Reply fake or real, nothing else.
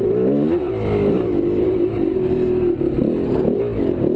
real